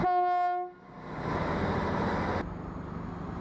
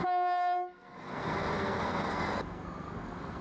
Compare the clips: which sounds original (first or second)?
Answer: first